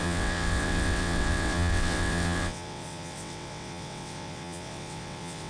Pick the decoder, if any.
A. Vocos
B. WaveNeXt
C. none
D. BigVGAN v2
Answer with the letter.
B